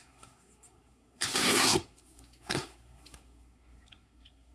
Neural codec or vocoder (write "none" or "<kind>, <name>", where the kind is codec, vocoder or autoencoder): codec, SNAC